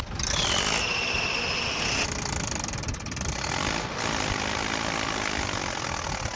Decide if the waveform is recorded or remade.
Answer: recorded